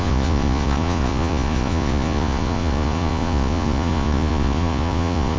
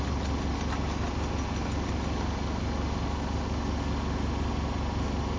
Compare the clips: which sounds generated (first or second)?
first